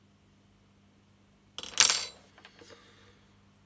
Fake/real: real